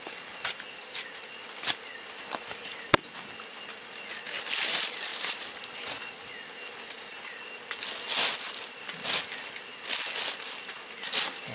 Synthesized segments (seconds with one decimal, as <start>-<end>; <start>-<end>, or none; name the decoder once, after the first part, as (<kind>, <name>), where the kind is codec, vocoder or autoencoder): none